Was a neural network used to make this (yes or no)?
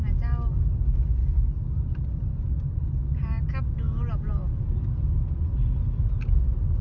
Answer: no